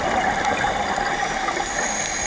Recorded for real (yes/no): yes